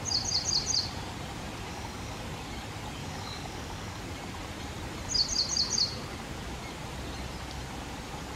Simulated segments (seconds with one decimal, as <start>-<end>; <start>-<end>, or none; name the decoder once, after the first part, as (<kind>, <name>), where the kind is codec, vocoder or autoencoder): 1.7-2.2 (codec, DAC); 3.0-4.0

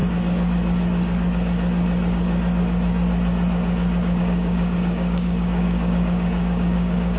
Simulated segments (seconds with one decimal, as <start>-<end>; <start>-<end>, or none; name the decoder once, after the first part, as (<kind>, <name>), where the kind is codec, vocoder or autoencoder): 4.2-7.2 (codec, DAC)

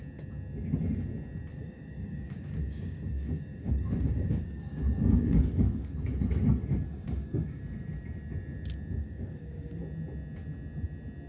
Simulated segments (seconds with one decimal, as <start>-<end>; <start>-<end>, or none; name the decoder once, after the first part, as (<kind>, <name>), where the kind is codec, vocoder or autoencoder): 1.5-6.2 (codec, DAC); 6.9-7.6; 9.0-9.8

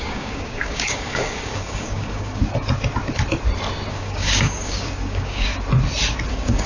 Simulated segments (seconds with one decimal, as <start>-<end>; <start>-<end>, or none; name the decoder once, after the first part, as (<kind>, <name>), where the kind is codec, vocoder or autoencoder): 0.0-2.4 (codec, DAC); 3.9-5.5; 6.3-6.7

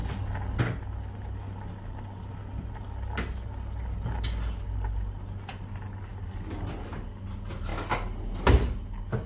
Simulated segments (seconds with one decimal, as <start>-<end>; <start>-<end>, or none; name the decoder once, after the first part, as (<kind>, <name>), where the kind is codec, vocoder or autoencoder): none

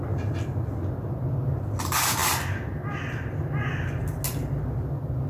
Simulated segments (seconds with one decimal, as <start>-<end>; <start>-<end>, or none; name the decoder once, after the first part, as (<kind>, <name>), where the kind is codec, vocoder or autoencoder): none

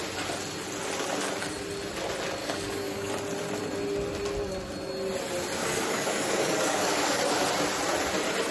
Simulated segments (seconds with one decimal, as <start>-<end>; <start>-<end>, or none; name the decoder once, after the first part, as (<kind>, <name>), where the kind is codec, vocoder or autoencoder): 2.4-3.1 (codec, DAC); 5.6-7.2